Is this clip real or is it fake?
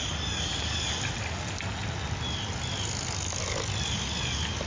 real